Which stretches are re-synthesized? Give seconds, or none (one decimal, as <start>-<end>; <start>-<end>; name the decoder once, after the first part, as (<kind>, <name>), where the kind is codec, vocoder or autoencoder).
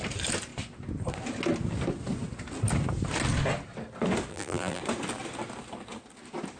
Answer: 4.3-4.8 (vocoder, BigVGAN v2)